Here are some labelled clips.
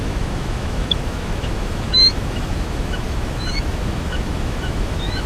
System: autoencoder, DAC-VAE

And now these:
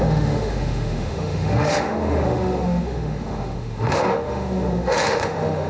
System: autoencoder, DAC-VAE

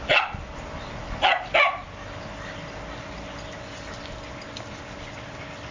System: none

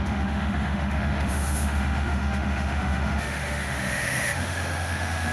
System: autoencoder, DAC-VAE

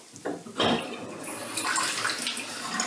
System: none